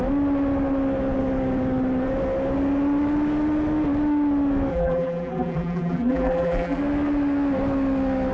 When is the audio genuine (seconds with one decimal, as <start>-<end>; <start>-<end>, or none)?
0.0-4.7; 6.8-8.3